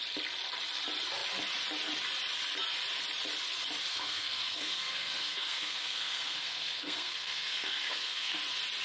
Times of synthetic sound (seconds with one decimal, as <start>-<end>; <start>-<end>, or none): 3.9-8.4